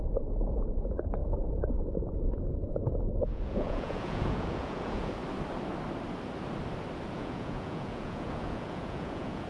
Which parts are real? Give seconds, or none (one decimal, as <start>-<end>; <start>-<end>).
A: 1.2-2.1; 5.2-7.1